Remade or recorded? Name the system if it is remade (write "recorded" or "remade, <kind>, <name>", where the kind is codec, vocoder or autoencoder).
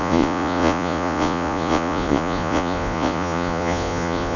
remade, vocoder, Vocos